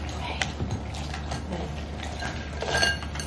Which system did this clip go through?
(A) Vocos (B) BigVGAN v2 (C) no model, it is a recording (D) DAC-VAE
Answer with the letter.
C